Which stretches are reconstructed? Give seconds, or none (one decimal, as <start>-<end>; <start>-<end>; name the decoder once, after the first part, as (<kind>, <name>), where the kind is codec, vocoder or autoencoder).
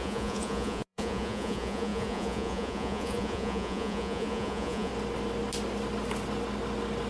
0.0-4.9 (vocoder, Vocos)